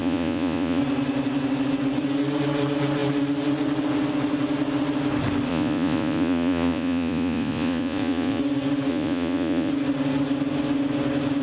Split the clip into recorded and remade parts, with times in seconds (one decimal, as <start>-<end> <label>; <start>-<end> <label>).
0.0-0.8 remade; 0.8-5.5 recorded; 5.5-8.4 remade; 8.4-8.9 recorded; 8.9-9.7 remade; 9.7-11.4 recorded